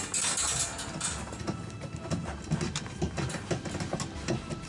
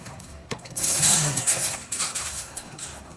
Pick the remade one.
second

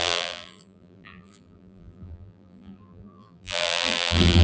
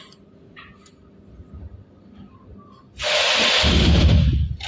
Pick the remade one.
first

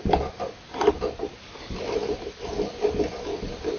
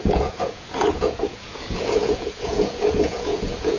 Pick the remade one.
second